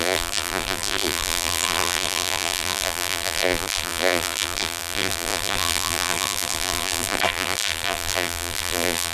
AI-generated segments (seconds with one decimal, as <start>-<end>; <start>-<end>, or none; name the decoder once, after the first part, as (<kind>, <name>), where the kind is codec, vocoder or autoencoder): 0.0-9.1 (vocoder, BigVGAN v2)